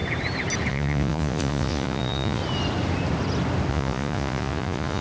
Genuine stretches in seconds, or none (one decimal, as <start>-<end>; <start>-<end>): 0.0-0.7; 2.4-3.7

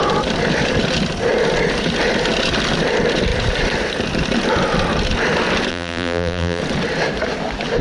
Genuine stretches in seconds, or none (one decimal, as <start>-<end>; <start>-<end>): 0.0-5.7; 6.6-7.8

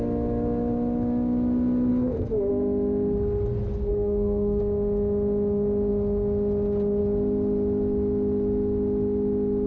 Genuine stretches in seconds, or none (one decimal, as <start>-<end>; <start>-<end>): 0.0-1.9; 2.5-3.9; 4.6-9.7

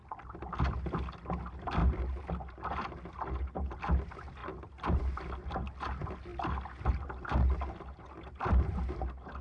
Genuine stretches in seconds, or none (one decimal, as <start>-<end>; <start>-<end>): 0.0-9.4

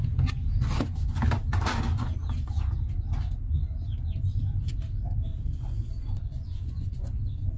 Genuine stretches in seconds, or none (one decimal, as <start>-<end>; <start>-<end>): 0.0-5.3; 7.1-7.6

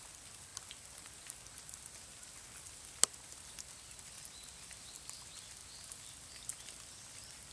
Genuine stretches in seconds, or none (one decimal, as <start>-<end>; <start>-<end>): 0.0-7.5

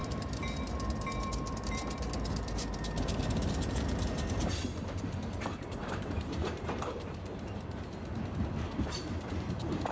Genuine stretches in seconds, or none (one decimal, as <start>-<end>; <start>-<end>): 5.0-5.8; 7.9-9.9

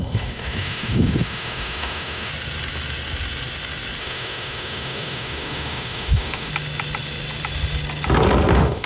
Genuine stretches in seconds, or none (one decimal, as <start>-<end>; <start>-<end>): 2.3-4.0; 6.5-8.5